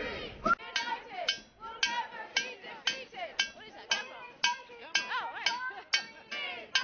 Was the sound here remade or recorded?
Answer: recorded